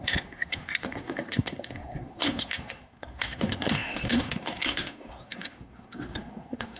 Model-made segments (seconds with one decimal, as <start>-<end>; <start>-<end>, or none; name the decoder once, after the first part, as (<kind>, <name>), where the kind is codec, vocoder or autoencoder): 0.0-6.8 (codec, SNAC)